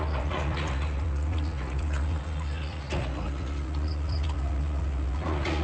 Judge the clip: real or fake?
fake